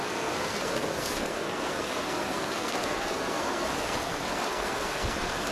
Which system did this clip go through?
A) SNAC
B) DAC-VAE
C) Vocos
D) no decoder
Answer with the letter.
A